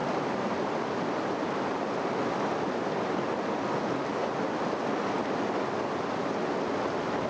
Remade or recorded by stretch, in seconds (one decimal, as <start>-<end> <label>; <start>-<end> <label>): 0.0-7.3 recorded